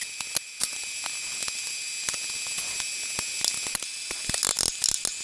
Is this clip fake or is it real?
real